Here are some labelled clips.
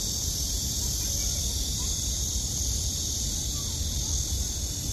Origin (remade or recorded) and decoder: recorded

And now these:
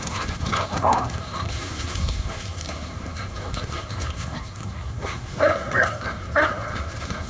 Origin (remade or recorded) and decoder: remade, codec, SNAC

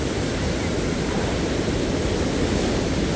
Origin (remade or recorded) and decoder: recorded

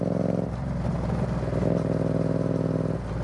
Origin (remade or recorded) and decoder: recorded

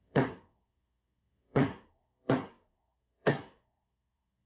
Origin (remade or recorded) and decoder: remade, codec, SNAC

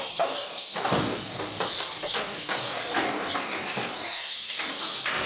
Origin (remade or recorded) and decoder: remade, codec, DAC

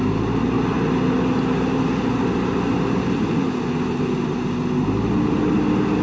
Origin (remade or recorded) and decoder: recorded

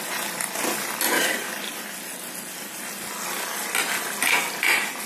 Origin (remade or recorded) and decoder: recorded